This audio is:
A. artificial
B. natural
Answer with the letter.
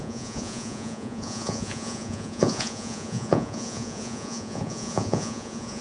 A